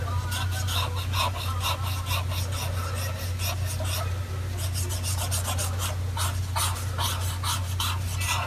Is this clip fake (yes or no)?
no